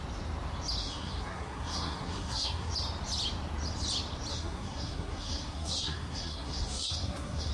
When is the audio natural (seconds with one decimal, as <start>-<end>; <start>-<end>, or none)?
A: 0.0-0.8; 2.7-4.3